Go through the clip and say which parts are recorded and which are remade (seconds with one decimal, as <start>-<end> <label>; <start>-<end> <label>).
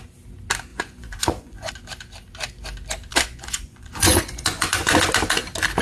0.0-0.7 recorded; 0.7-1.7 remade; 1.7-3.1 recorded; 3.1-5.1 remade; 5.1-5.8 recorded